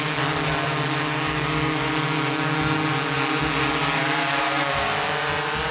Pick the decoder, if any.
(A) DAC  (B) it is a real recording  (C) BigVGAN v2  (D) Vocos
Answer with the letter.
B